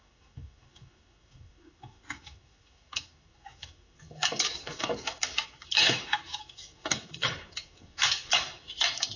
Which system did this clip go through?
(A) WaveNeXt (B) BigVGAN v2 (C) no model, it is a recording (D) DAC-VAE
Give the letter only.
D